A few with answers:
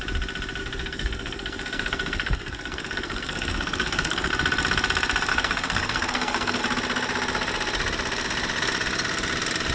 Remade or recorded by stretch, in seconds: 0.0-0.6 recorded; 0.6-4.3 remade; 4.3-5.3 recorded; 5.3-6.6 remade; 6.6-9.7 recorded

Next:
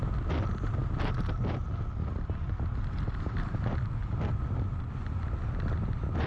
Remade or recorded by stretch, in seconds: 0.0-6.3 recorded

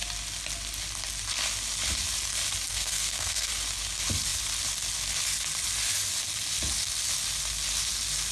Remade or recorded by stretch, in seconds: 0.0-2.7 recorded; 2.7-3.5 remade; 3.5-8.3 recorded

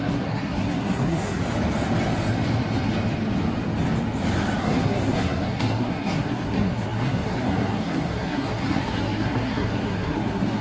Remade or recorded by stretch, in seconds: 0.0-1.4 remade; 1.4-4.6 recorded; 4.6-10.6 remade